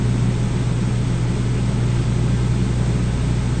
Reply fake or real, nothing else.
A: real